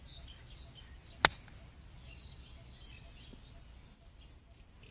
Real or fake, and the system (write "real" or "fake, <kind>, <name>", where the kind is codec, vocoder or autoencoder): real